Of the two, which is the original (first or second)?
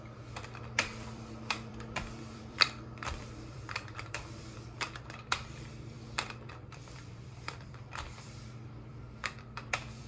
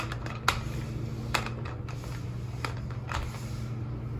second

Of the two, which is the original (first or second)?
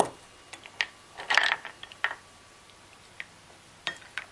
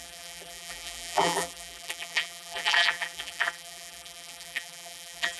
first